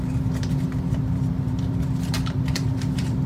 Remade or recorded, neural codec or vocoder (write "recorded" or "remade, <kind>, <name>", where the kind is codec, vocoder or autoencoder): remade, vocoder, BigVGAN v2